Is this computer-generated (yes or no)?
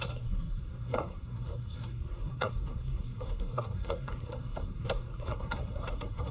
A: yes